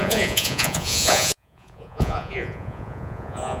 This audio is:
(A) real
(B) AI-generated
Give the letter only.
B